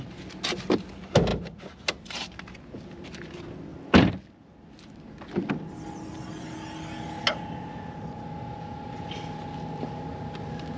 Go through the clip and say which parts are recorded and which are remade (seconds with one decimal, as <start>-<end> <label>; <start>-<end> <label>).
0.0-10.8 recorded